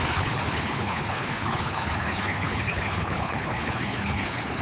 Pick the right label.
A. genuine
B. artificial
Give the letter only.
B